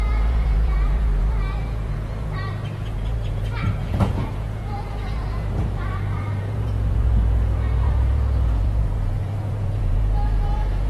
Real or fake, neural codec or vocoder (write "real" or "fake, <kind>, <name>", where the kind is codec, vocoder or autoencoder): fake, vocoder, Vocos